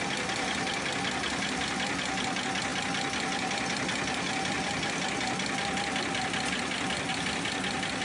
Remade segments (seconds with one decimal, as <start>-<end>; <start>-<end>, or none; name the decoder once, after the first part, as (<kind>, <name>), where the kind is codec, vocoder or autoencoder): none